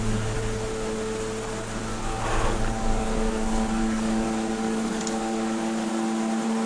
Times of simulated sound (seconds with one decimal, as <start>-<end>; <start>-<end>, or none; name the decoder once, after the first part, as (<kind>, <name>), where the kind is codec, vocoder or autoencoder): 1.9-5.9 (codec, DAC)